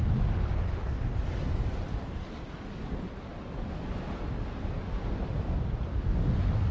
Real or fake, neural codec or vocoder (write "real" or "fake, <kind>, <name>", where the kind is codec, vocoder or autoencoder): real